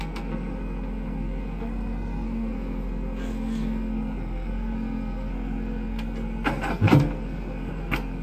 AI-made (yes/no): yes